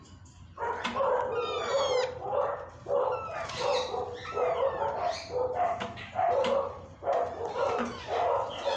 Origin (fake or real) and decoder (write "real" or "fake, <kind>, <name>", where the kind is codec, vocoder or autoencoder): real